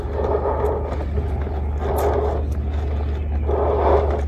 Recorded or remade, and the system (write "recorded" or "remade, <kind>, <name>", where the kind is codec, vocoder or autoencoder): recorded